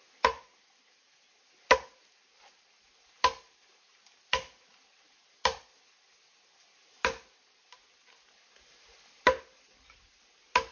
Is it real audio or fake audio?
real